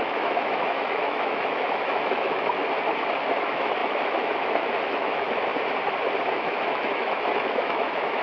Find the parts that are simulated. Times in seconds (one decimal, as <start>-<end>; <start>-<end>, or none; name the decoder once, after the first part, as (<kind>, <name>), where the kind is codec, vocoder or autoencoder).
0.0-2.6 (autoencoder, DAC-VAE); 3.3-5.5; 6.3-8.2